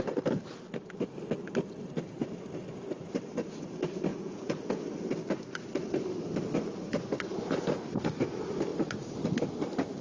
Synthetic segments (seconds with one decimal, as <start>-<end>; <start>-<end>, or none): 4.1-4.8